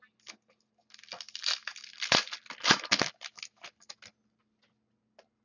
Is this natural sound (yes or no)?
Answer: yes